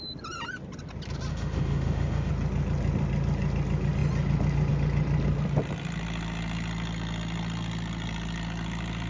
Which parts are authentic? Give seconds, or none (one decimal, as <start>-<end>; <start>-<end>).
0.0-1.3; 2.3-9.1